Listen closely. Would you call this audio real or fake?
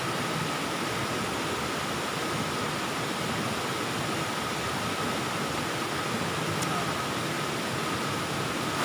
real